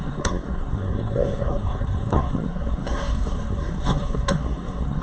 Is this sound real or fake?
fake